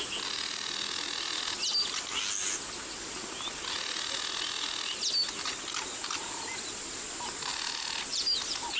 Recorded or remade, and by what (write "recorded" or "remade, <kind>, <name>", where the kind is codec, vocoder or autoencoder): recorded